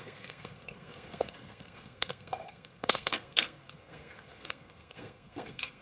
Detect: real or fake fake